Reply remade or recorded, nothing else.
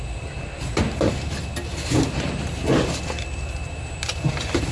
recorded